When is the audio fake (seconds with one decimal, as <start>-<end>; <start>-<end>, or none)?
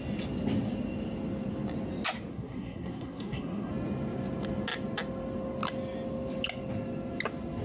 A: 2.3-3.7